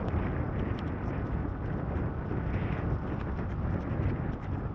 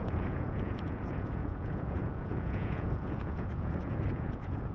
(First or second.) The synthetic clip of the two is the second